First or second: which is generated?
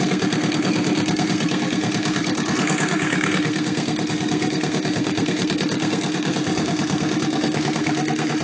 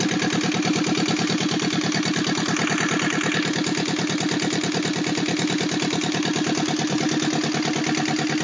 first